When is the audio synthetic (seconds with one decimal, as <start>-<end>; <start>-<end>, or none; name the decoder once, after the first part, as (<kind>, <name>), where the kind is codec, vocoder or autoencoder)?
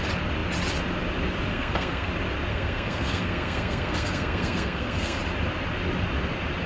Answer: 1.5-2.1 (codec, SNAC); 2.5-5.2